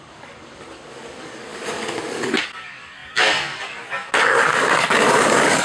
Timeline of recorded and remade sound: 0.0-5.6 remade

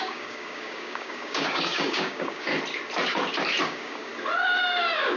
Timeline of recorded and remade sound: 0.0-2.5 remade; 2.5-3.6 recorded; 3.6-4.1 remade; 4.1-4.6 recorded; 4.6-5.2 remade

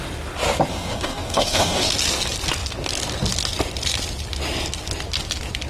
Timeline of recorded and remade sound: 0.0-0.7 recorded; 0.7-1.9 remade; 1.9-5.7 recorded